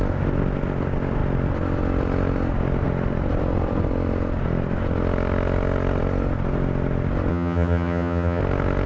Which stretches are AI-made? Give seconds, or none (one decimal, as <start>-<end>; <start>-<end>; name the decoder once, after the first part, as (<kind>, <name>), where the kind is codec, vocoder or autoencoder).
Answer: 7.3-8.4 (vocoder, HiFi-GAN)